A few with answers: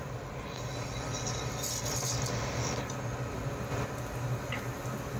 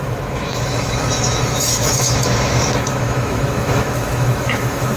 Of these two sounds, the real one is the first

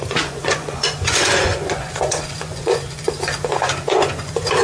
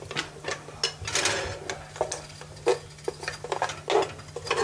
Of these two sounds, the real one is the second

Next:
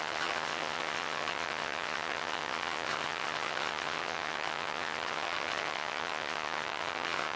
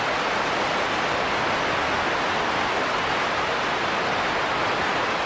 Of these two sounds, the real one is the second